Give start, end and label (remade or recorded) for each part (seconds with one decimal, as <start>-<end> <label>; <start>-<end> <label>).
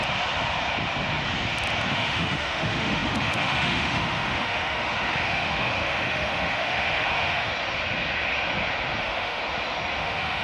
0.0-1.9 recorded; 1.9-7.5 remade; 7.5-9.0 recorded; 9.0-9.4 remade; 9.4-10.0 recorded; 10.0-10.4 remade